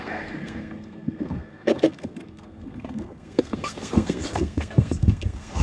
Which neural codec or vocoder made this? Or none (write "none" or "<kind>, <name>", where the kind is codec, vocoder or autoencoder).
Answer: codec, SNAC